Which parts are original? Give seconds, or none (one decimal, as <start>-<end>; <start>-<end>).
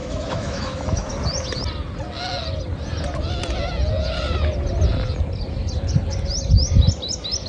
1.1-7.5